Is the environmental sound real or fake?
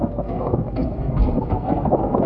fake